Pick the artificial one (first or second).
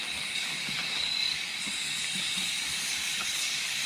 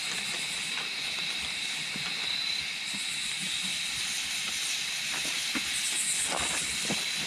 first